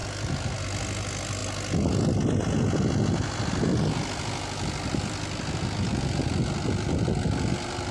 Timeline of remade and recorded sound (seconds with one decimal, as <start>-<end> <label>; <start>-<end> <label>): 0.0-7.9 recorded